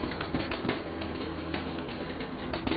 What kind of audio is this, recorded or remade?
remade